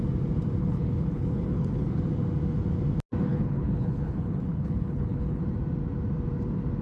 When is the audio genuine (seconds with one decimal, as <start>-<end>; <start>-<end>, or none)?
0.0-0.6; 2.0-3.3; 5.4-6.8